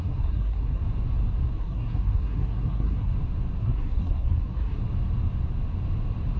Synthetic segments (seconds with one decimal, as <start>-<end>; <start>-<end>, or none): 0.0-0.8; 1.6-3.1; 3.6-4.8